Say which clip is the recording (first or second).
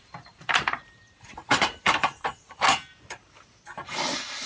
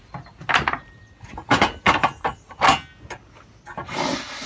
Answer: second